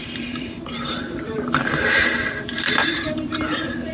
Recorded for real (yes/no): no